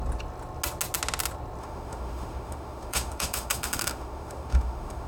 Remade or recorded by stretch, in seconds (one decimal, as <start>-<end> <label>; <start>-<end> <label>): 0.0-1.6 recorded; 1.6-5.1 remade